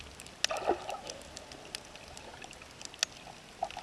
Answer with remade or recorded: recorded